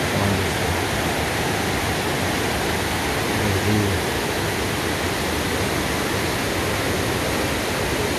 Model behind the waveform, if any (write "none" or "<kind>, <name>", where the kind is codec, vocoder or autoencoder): none